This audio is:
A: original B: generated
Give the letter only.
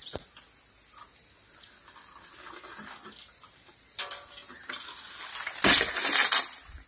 A